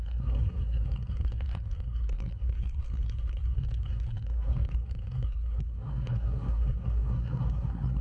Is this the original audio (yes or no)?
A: no